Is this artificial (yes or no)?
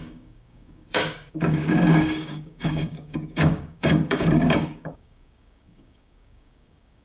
yes